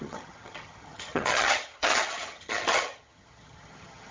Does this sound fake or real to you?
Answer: fake